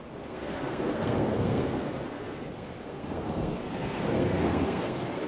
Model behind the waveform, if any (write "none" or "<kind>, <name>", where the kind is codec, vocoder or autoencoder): codec, SNAC